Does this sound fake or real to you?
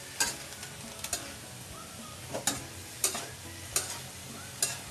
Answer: real